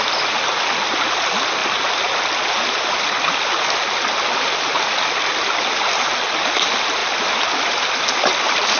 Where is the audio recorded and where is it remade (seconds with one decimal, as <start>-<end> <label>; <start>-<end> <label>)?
0.0-7.0 recorded; 7.0-7.7 remade; 7.7-8.8 recorded